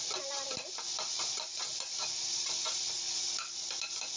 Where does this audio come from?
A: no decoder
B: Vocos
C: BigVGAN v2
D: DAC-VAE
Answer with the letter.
A